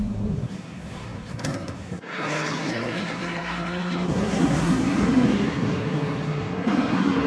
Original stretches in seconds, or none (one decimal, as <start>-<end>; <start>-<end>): none